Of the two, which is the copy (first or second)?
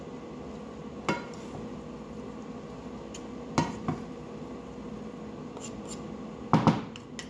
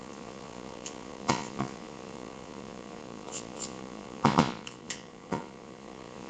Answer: second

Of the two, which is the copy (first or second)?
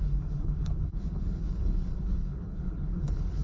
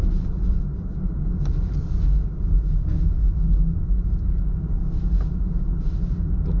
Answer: first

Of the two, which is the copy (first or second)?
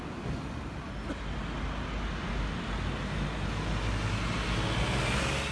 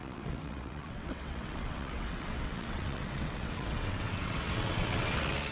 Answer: second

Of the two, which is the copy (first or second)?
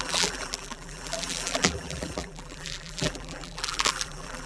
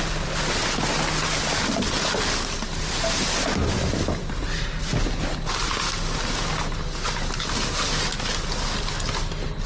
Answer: first